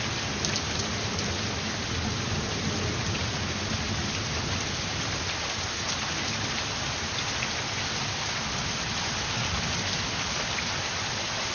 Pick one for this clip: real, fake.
real